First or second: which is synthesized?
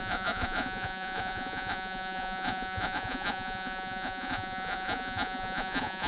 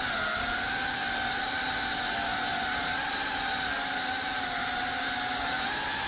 first